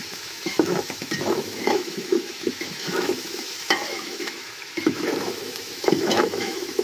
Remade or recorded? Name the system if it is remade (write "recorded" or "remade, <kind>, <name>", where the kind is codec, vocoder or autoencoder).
remade, autoencoder, DAC-VAE